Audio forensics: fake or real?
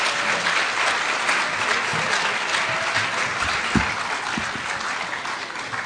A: real